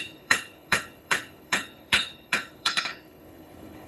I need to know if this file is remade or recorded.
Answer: remade